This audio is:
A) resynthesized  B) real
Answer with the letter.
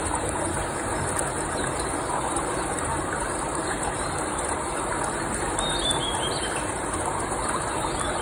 A